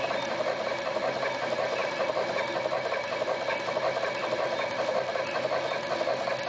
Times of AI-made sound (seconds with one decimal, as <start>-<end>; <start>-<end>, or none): none